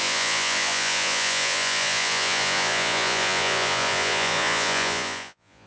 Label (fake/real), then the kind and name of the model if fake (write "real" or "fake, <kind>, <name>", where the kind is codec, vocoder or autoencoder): fake, vocoder, Vocos